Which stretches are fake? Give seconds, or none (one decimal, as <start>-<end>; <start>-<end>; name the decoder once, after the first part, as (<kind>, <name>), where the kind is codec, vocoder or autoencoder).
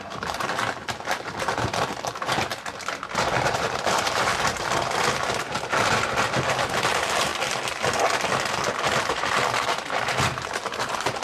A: 0.0-2.5 (vocoder, BigVGAN v2); 3.2-4.3; 6.7-7.3; 8.8-11.2